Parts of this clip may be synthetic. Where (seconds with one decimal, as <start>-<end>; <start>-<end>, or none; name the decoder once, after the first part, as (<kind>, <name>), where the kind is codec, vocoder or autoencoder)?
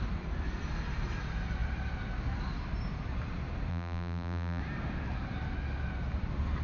3.7-4.6 (vocoder, BigVGAN v2)